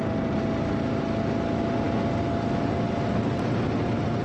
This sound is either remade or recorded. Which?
recorded